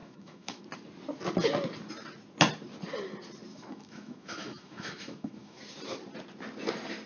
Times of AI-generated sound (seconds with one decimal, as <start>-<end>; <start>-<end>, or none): 0.0-0.6; 3.5-5.6

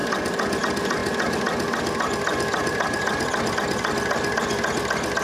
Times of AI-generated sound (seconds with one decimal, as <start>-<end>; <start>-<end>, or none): none